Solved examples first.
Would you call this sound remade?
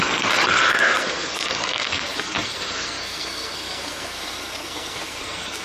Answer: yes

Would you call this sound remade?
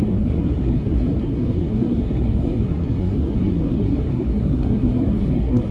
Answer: yes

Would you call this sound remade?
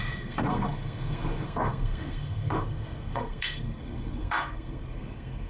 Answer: yes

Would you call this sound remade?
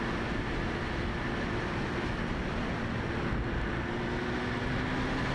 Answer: no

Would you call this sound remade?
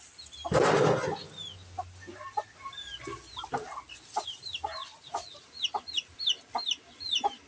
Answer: no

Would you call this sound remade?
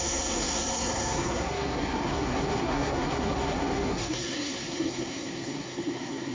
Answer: yes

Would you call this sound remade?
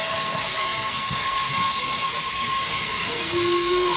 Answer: yes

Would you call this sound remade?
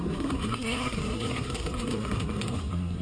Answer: yes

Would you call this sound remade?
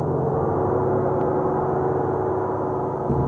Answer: no